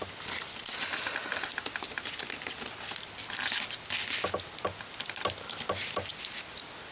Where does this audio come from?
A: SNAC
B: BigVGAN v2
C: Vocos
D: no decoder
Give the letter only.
D